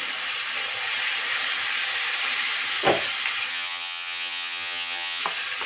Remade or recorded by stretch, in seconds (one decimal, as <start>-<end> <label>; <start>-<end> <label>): 0.0-3.5 recorded; 3.5-5.2 remade; 5.2-5.7 recorded